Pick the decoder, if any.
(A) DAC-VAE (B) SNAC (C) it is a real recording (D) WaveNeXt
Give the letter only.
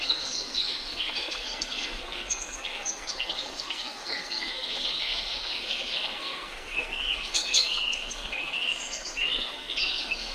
B